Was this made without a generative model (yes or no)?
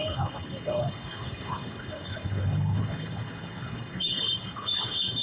no